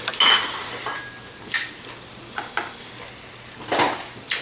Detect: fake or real real